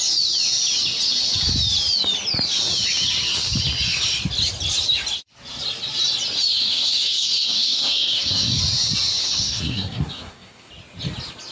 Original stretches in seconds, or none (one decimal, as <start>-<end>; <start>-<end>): 0.0-6.6; 8.6-9.2; 10.7-11.5